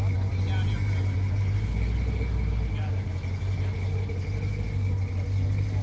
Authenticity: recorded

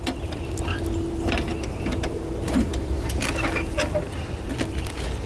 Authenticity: recorded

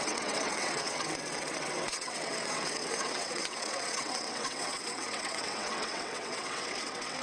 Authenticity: remade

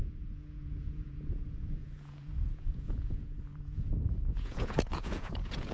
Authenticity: remade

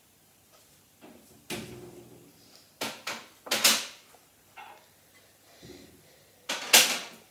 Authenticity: recorded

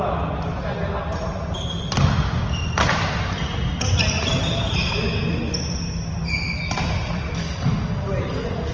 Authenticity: recorded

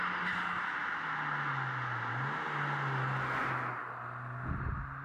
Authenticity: recorded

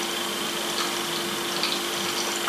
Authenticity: recorded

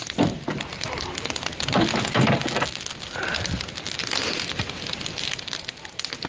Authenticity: recorded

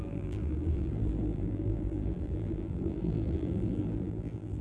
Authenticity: remade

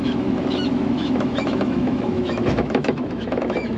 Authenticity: remade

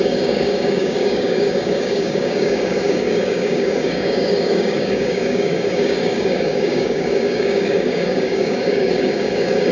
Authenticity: remade